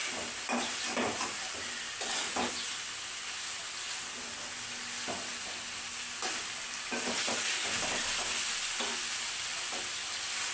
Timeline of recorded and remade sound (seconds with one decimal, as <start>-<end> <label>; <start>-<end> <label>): 0.0-10.5 recorded